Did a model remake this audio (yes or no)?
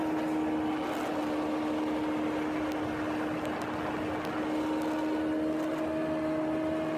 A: no